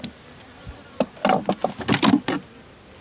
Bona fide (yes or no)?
yes